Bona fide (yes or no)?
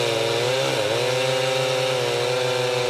yes